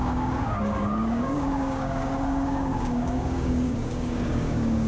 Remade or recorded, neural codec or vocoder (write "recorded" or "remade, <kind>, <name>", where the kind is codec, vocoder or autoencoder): remade, codec, DAC